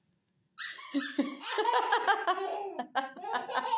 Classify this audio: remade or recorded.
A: recorded